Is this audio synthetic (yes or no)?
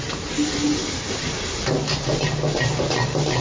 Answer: no